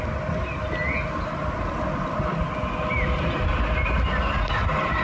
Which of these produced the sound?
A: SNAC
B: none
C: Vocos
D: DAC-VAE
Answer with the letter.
B